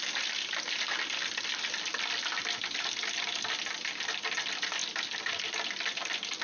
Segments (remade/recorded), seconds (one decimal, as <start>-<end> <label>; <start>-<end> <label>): 0.0-6.4 recorded